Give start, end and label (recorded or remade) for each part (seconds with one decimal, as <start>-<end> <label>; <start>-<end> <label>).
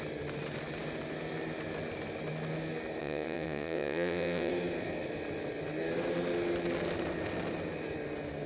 0.0-3.0 recorded; 3.0-4.5 remade; 4.5-8.5 recorded